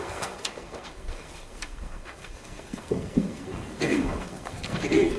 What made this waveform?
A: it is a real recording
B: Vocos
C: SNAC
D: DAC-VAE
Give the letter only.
C